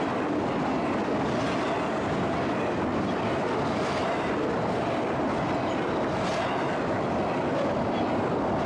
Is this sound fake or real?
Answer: real